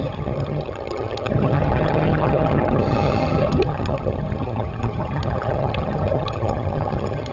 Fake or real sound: fake